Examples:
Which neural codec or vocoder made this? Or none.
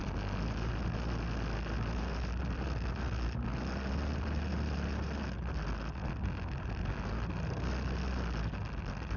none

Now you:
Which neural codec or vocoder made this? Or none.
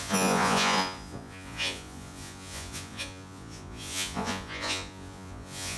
vocoder, Vocos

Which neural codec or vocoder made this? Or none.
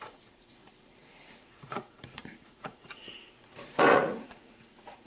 vocoder, Vocos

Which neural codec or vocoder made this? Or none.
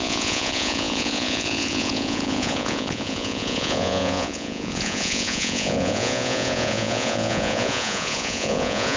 vocoder, Vocos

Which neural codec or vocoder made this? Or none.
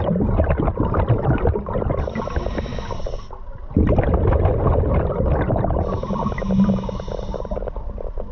none